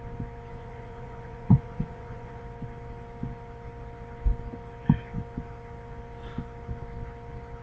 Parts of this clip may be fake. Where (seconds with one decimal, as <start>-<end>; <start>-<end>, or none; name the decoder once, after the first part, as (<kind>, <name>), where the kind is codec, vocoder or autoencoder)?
0.5-2.4 (vocoder, Vocos)